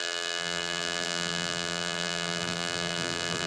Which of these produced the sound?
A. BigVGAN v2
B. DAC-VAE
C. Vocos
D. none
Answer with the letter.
A